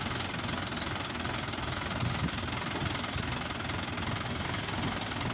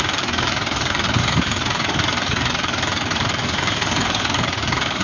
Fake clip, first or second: second